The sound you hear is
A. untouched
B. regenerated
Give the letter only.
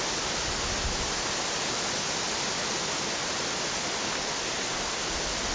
A